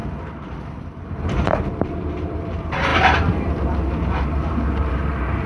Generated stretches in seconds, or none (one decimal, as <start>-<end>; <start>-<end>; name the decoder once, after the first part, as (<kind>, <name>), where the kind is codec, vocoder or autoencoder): 0.0-5.5 (vocoder, BigVGAN v2)